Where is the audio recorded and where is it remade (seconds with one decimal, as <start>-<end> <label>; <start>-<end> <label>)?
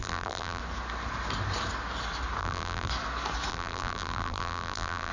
0.0-0.6 remade; 0.6-2.4 recorded; 2.4-2.9 remade; 2.9-3.5 recorded; 3.5-5.1 remade